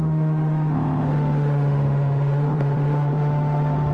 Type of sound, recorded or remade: remade